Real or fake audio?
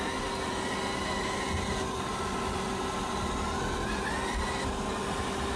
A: real